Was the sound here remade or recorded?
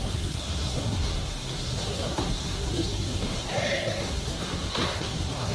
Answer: remade